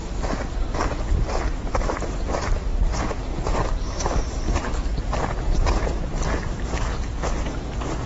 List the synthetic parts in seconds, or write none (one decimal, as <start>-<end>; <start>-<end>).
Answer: 1.6-3.2; 4.9-5.6